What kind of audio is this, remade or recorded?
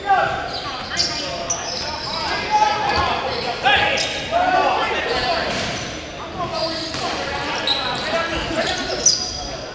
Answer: recorded